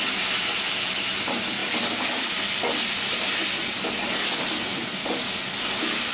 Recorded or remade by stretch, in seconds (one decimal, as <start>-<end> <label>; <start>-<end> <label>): 0.0-1.6 recorded; 1.6-2.3 remade; 2.3-4.7 recorded; 4.7-5.2 remade; 5.2-6.1 recorded

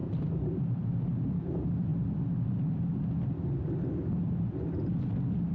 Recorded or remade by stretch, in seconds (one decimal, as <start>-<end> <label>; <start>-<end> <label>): 0.0-1.0 remade; 1.0-1.9 recorded; 1.9-2.5 remade; 2.5-5.5 recorded

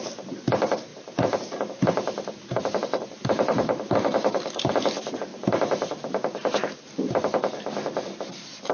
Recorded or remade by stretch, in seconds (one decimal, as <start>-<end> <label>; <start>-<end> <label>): 0.0-0.9 recorded; 0.9-4.7 remade; 4.7-5.3 recorded; 5.3-6.7 remade; 6.7-8.7 recorded